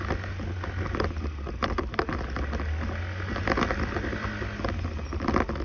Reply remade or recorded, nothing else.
recorded